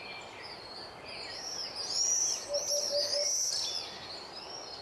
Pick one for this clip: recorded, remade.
recorded